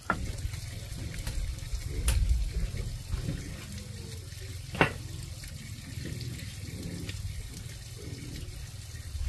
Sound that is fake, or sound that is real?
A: real